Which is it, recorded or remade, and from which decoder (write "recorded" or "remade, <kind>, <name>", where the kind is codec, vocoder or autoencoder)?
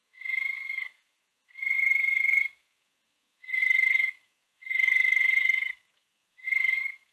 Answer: recorded